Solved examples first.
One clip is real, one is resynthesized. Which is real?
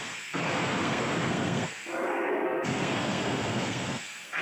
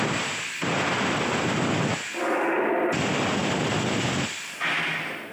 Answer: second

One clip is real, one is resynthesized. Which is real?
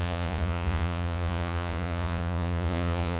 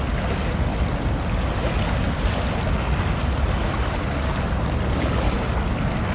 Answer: second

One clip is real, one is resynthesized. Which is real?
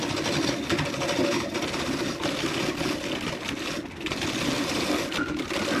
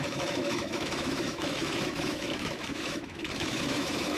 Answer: first